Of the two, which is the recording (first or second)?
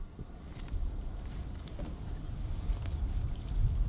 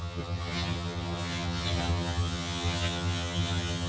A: first